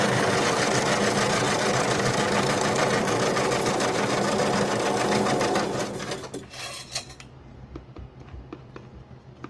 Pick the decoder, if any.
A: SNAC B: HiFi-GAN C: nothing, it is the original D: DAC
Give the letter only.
C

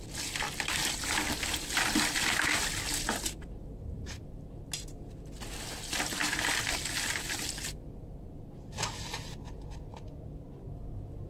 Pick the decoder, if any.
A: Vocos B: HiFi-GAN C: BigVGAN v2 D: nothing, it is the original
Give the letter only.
D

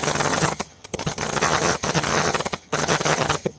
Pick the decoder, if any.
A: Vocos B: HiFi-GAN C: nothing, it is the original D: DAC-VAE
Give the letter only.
B